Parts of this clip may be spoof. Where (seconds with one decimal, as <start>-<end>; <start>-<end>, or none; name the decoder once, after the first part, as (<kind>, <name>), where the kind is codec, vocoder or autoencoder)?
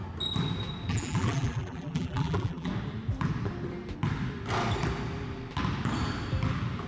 0.9-2.7 (vocoder, BigVGAN v2)